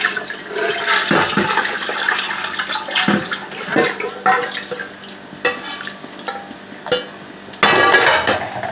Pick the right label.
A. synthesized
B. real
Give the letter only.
B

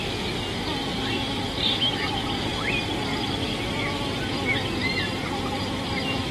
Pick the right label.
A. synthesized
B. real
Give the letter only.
B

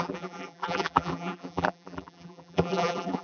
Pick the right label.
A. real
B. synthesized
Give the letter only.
B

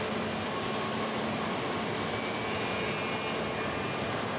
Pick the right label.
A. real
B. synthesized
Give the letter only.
A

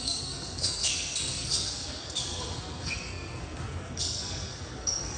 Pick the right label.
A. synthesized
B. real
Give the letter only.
A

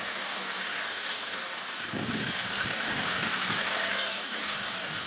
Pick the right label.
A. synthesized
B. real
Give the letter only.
A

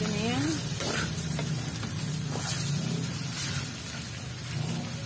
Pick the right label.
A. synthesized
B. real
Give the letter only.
B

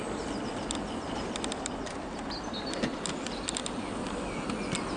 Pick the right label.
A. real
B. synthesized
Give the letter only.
A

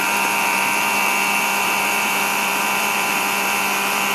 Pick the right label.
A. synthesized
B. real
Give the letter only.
A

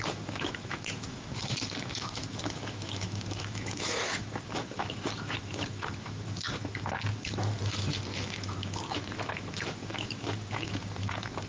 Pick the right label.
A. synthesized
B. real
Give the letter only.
A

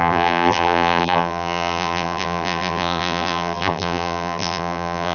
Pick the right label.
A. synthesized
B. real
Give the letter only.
A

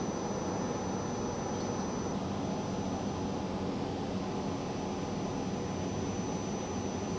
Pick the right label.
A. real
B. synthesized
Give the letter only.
A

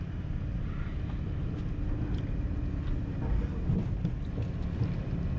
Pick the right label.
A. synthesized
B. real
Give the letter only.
B